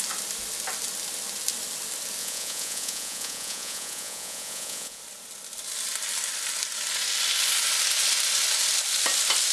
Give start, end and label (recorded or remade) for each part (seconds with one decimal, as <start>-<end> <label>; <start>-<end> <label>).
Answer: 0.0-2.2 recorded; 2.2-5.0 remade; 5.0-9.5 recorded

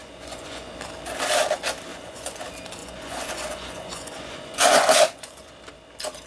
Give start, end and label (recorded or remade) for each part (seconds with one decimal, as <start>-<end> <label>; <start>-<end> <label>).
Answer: 0.0-0.7 remade; 0.7-1.9 recorded; 1.9-2.4 remade; 2.4-2.8 recorded; 2.8-5.5 remade; 5.5-6.3 recorded

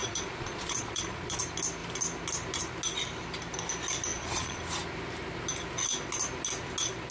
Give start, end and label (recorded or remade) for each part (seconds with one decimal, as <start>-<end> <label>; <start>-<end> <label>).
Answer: 0.0-1.4 remade; 1.4-4.1 recorded; 4.1-4.6 remade; 4.6-7.1 recorded

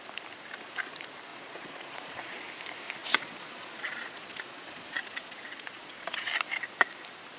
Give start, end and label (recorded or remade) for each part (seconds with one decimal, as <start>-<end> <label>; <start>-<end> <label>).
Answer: 0.0-1.3 recorded; 1.3-2.5 remade; 2.5-3.0 recorded; 3.0-6.3 remade; 6.3-7.4 recorded